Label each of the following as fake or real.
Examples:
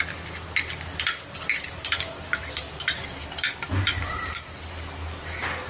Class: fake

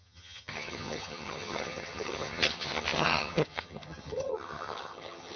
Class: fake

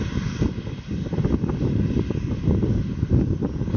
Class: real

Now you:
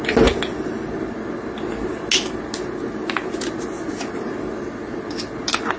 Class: real